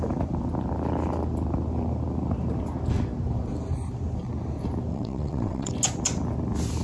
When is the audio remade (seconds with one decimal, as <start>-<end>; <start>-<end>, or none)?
4.9-5.7